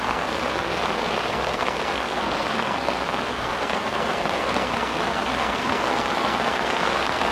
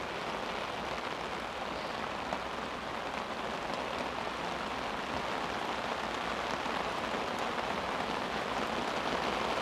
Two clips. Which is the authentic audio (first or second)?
second